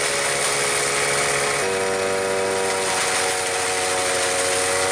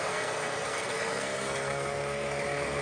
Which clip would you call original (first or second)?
first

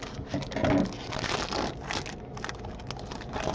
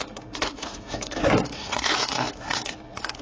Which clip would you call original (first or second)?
first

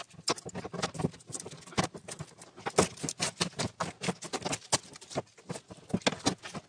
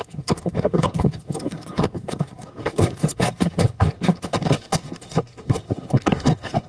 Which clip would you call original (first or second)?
first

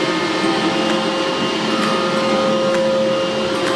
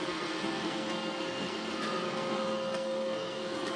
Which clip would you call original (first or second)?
first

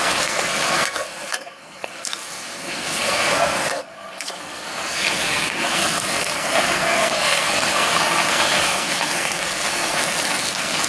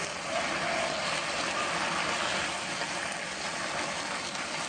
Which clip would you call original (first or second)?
second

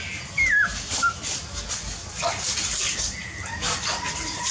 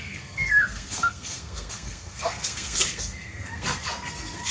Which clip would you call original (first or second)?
first